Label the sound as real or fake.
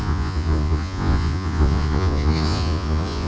fake